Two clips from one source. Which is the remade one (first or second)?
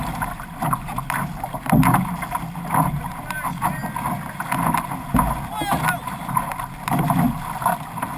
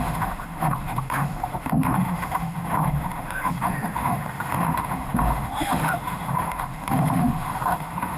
second